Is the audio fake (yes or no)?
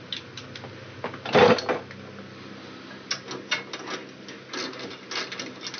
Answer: no